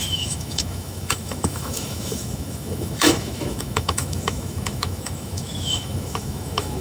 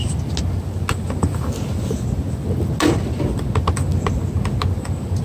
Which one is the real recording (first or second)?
second